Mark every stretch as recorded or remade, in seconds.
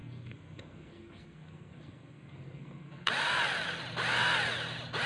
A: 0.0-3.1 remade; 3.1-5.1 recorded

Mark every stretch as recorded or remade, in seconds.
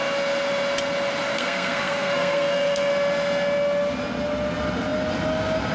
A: 0.0-1.3 recorded; 1.3-2.9 remade; 2.9-5.7 recorded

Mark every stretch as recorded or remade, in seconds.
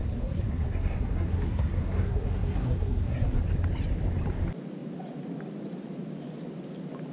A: 0.0-3.4 remade; 3.4-7.1 recorded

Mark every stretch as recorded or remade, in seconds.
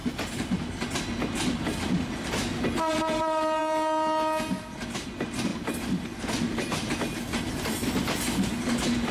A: 0.0-9.1 recorded